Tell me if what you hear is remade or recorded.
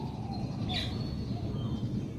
recorded